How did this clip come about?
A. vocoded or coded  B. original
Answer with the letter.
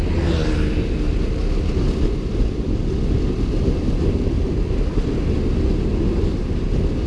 B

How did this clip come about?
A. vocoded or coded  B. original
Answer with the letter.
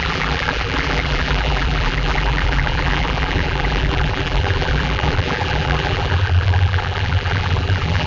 A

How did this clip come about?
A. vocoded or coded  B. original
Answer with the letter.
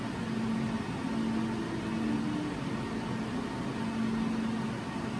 B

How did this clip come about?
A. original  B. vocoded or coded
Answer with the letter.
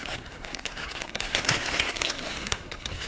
B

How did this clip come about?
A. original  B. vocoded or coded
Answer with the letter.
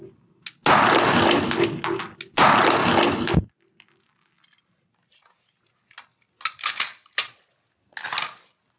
A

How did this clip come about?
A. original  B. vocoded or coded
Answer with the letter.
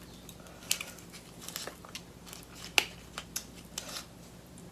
A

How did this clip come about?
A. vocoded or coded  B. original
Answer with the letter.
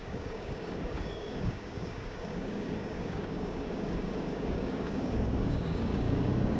A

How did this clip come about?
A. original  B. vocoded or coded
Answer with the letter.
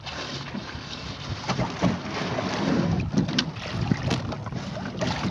A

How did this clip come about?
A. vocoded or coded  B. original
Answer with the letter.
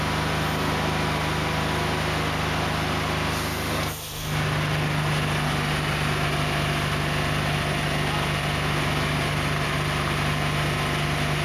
B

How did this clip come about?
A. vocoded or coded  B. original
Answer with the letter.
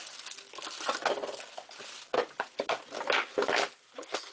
B